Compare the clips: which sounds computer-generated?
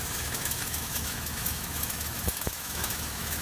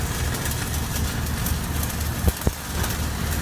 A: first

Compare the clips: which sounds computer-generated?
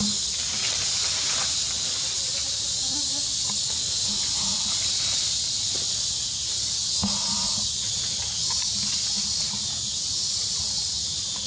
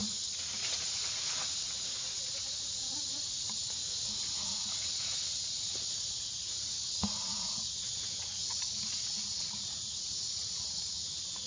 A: second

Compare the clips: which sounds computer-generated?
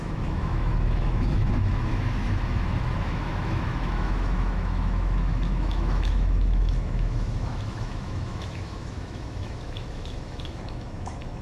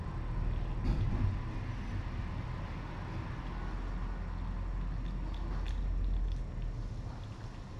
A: first